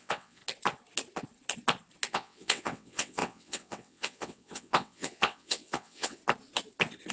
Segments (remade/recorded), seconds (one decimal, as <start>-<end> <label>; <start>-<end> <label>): 0.0-0.4 remade; 0.4-2.1 recorded; 2.1-6.2 remade; 6.2-7.1 recorded